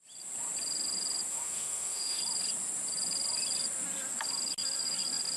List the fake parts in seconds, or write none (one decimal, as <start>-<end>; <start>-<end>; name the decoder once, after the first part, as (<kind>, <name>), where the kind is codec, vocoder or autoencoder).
1.3-2.2 (autoencoder, DAC-VAE)